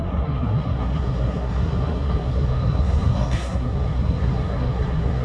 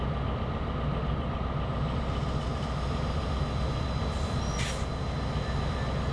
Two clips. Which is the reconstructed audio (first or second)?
first